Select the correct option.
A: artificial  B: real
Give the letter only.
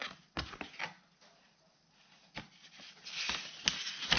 B